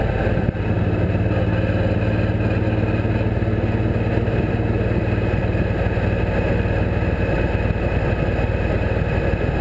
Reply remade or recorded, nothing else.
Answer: recorded